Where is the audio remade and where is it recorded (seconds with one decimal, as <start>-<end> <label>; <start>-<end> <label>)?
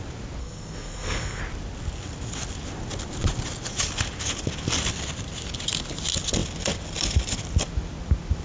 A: 0.0-0.4 recorded; 0.4-1.4 remade; 1.4-8.4 recorded